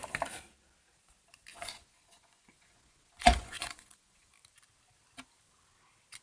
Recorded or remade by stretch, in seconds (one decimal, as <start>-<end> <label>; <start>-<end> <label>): 0.0-1.5 recorded; 1.5-4.3 remade; 4.3-6.2 recorded